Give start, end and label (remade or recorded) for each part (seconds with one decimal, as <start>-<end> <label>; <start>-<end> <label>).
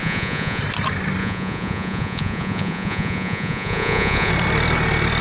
0.0-0.6 remade; 0.6-1.2 recorded; 1.2-4.3 remade; 4.3-5.2 recorded